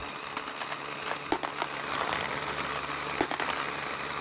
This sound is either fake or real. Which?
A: real